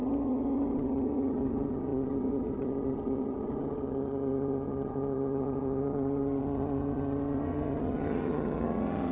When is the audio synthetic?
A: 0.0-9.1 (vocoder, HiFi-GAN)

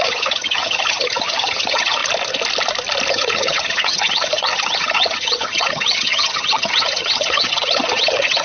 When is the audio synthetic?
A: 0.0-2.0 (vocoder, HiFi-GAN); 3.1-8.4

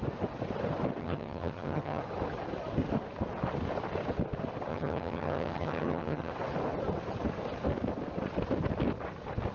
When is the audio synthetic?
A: 1.0-2.0 (vocoder, HiFi-GAN); 4.7-6.3

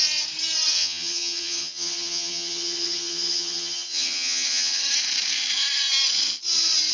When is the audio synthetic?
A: 0.7-4.8 (vocoder, HiFi-GAN)

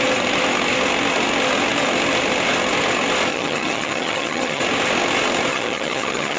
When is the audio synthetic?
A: 3.3-4.6 (vocoder, HiFi-GAN); 5.5-6.4